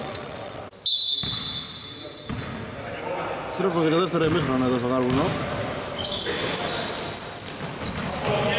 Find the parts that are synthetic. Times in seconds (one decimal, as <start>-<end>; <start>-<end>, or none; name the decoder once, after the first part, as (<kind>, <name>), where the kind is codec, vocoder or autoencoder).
0.0-0.6 (vocoder, WaveNeXt)